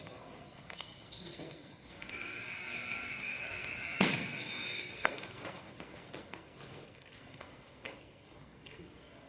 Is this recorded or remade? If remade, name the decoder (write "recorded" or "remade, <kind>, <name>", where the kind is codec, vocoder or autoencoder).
remade, codec, SNAC